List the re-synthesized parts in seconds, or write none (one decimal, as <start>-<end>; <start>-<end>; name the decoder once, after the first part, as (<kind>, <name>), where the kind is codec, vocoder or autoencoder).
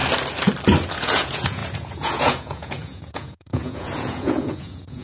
0.9-5.0 (vocoder, Vocos)